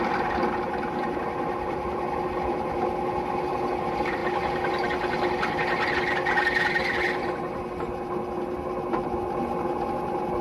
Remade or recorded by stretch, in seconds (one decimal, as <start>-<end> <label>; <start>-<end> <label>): 0.0-10.4 recorded